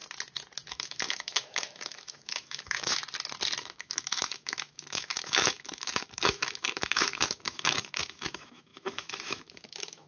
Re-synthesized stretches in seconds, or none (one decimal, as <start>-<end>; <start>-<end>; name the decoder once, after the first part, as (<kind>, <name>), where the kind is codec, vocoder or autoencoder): 0.7-3.0 (autoencoder, DAC-VAE); 3.6-10.1